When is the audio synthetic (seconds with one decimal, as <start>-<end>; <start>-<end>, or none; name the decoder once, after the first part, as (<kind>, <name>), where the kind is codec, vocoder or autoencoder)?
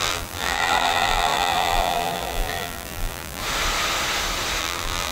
0.0-3.4 (vocoder, BigVGAN v2); 4.6-5.1